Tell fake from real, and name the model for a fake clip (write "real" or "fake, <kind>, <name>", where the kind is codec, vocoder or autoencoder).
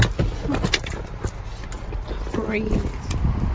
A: real